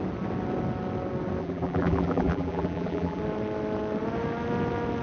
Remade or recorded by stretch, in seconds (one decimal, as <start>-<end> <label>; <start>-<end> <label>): 0.0-1.4 recorded; 1.4-3.2 remade; 3.2-5.0 recorded